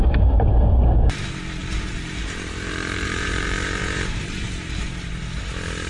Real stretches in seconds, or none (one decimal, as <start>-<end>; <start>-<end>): 0.8-1.6; 5.1-5.9